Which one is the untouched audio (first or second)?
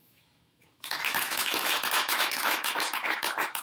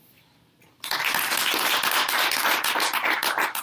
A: second